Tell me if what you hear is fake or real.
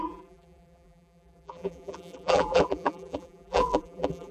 fake